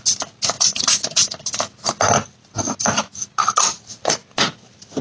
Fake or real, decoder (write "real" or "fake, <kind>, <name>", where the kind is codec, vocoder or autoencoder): real